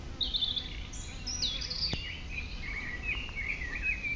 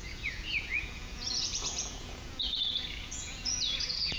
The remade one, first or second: second